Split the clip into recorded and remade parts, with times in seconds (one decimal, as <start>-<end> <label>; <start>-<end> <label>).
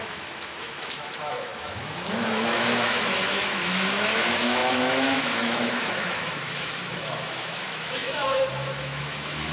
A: 0.0-9.5 remade